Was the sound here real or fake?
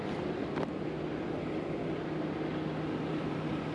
real